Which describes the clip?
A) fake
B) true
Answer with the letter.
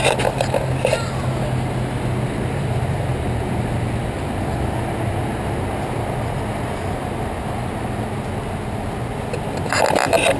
B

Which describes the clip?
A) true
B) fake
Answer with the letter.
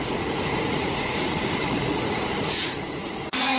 B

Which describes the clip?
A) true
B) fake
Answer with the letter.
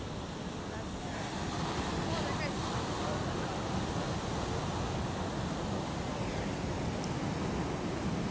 A